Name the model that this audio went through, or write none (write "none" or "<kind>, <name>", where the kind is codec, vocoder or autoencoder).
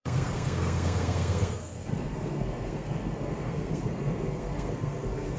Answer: codec, SNAC